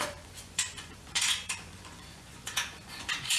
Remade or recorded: remade